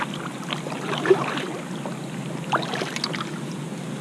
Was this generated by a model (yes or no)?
no